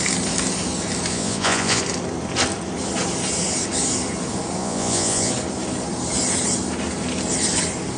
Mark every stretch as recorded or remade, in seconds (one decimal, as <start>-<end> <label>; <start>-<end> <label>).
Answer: 0.0-1.1 recorded; 1.1-1.8 remade; 1.8-4.6 recorded; 4.6-5.3 remade; 5.3-8.0 recorded